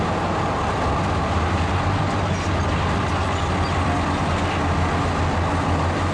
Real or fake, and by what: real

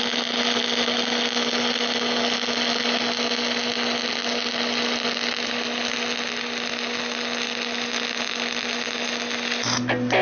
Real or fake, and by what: real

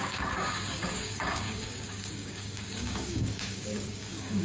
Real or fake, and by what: fake, codec, DAC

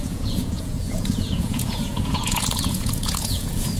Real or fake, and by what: fake, vocoder, Vocos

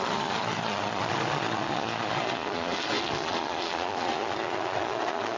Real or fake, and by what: fake, vocoder, Vocos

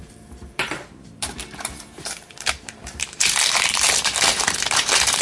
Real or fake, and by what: fake, vocoder, BigVGAN v2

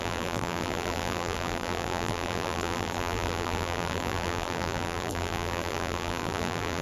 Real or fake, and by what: fake, vocoder, BigVGAN v2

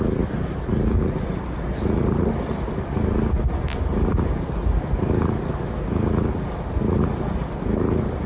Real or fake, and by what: real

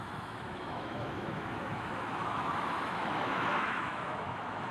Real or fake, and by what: fake, autoencoder, DAC-VAE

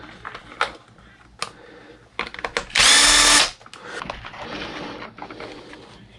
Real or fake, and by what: real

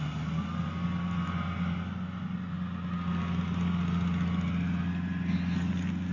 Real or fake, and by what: real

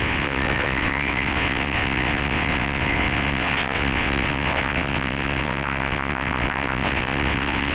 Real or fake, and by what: fake, vocoder, WaveNeXt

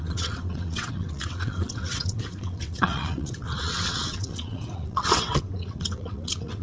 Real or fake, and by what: fake, vocoder, WaveNeXt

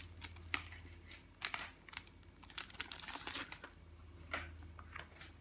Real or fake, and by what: real